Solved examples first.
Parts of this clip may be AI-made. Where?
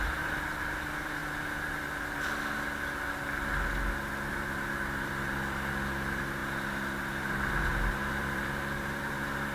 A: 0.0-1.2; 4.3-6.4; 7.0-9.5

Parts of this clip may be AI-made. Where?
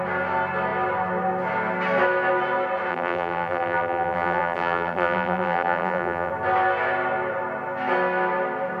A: 2.9-6.3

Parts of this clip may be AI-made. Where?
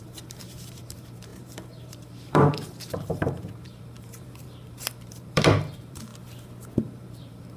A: 0.0-6.1; 6.8-7.6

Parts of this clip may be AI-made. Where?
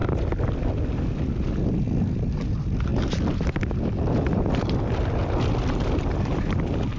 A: none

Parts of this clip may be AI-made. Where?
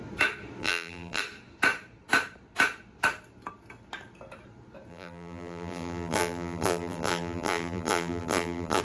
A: 0.6-1.2; 4.9-8.8